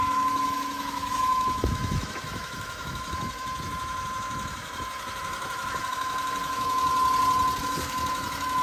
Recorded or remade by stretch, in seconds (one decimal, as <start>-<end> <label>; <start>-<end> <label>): 0.0-6.9 remade; 6.9-7.6 recorded; 7.6-8.6 remade